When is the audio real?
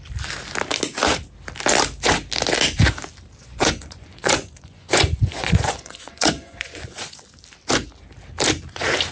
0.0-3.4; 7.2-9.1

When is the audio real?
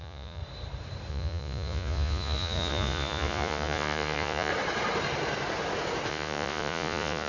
0.4-1.1; 4.5-6.1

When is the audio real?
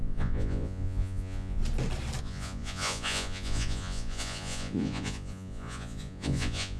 1.6-2.2